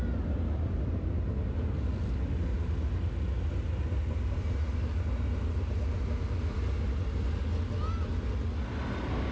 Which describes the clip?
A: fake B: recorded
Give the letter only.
B